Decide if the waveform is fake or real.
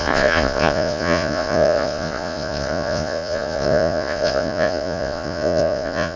fake